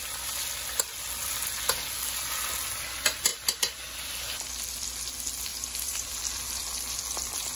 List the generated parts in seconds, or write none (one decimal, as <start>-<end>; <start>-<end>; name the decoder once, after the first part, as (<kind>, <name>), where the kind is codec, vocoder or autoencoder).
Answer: 3.3-4.1 (vocoder, BigVGAN v2); 5.5-6.2